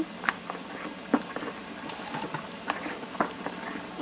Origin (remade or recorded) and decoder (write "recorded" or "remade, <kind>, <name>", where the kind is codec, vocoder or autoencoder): recorded